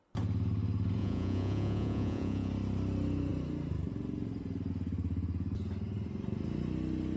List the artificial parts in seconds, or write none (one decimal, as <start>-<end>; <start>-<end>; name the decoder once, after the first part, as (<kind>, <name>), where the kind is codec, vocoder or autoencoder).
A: 1.0-2.5 (vocoder, Vocos)